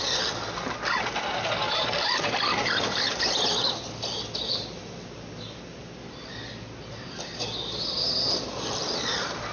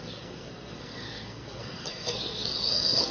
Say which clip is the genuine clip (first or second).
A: first